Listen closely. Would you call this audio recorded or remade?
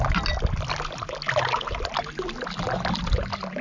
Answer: recorded